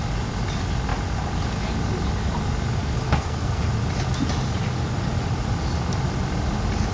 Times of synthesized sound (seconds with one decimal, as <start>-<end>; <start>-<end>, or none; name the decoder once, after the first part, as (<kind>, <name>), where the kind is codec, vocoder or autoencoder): 2.8-3.6 (codec, SNAC)